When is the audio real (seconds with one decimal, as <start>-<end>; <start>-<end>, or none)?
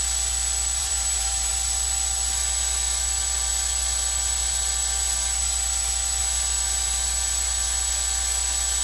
0.0-0.8; 1.5-8.8